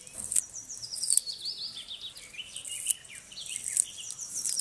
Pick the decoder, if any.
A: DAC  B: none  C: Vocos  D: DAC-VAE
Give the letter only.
B